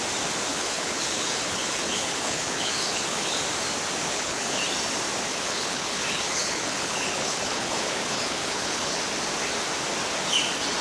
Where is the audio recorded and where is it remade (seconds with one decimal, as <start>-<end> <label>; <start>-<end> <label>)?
0.0-0.5 recorded; 0.5-3.4 remade; 3.4-4.1 recorded; 4.1-4.6 remade; 4.6-5.3 recorded; 5.3-9.0 remade; 9.0-10.8 recorded